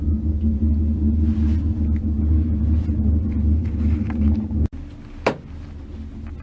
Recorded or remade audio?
recorded